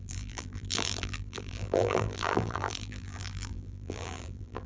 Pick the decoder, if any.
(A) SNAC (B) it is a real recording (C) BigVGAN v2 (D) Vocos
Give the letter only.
C